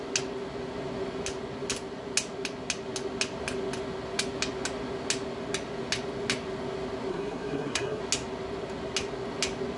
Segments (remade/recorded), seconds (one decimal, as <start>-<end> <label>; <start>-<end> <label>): 0.0-7.1 recorded; 7.1-8.0 remade; 8.0-9.8 recorded